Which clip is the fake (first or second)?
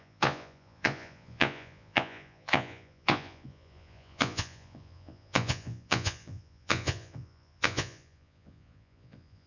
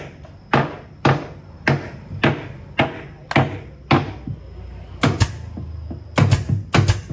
first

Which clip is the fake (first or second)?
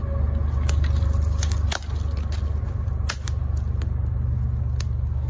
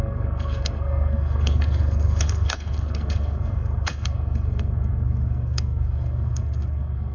second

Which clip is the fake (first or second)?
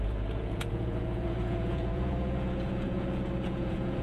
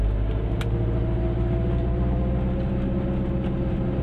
first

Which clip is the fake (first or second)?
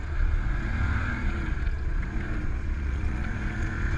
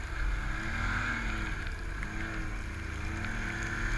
first